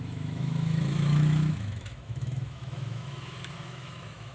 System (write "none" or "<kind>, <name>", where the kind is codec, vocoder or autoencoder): autoencoder, DAC-VAE